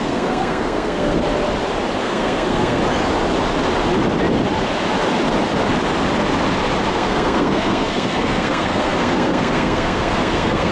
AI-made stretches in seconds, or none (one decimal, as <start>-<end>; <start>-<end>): 0.0-1.2; 2.0-2.8; 6.9-10.7